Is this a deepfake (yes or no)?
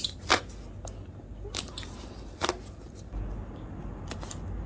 no